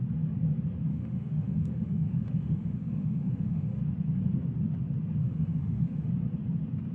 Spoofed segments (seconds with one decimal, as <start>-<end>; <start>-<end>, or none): 0.9-3.8; 5.2-6.1